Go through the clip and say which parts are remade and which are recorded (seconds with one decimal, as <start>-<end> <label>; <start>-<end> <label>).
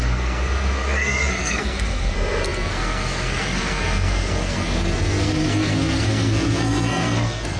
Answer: 0.0-7.6 remade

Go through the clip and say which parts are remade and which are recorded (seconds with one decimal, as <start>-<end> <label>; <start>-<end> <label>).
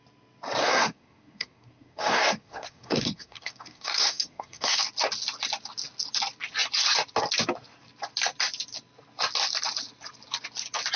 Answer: 0.0-0.6 recorded; 0.6-4.8 remade; 4.8-11.0 recorded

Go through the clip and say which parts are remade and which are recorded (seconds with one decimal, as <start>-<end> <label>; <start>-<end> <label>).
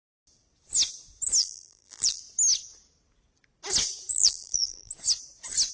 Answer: 0.0-1.4 recorded; 1.4-2.2 remade; 2.2-4.1 recorded; 4.1-4.9 remade; 4.9-5.7 recorded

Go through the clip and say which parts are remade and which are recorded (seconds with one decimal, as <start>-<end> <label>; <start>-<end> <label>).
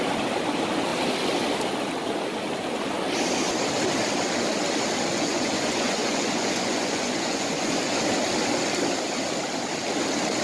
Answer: 0.0-5.1 recorded; 5.1-8.0 remade; 8.0-10.4 recorded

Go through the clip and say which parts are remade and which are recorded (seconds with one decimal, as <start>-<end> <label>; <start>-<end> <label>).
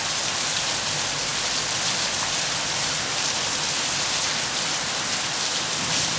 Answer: 0.0-6.2 recorded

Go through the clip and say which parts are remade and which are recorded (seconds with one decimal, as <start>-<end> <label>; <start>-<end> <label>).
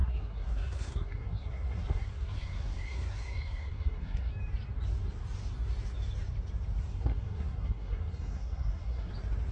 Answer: 0.0-4.3 remade; 4.3-6.9 recorded; 6.9-9.1 remade; 9.1-9.5 recorded